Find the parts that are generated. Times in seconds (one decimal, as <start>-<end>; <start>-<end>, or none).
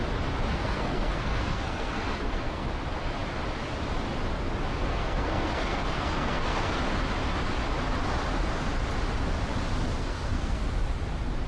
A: 0.5-2.7; 4.9-6.8; 10.0-10.6